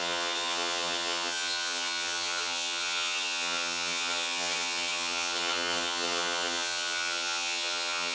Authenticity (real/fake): fake